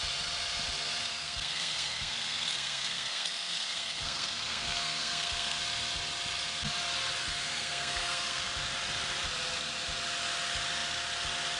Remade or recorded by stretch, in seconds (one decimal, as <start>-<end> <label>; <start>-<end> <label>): 0.0-1.1 recorded; 1.1-5.6 remade; 5.6-7.4 recorded; 7.4-8.5 remade; 8.5-11.6 recorded